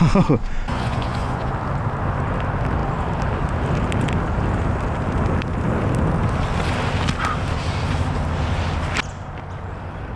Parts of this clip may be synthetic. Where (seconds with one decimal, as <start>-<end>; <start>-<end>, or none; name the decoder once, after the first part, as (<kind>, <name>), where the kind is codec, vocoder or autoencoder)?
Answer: 0.7-1.5 (vocoder, Vocos)